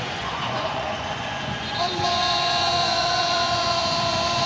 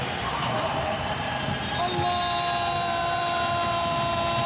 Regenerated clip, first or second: first